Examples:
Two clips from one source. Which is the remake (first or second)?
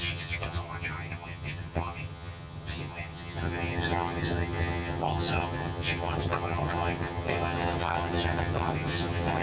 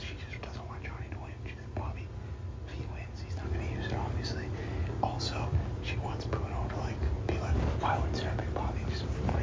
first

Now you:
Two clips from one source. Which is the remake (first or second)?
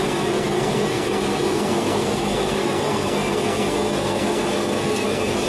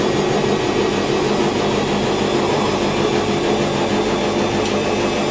first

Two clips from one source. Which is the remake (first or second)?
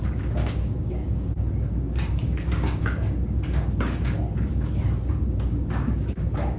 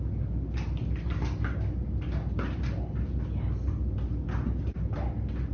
first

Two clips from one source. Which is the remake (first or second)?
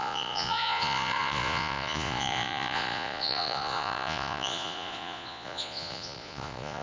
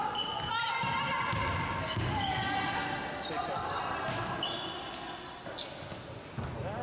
first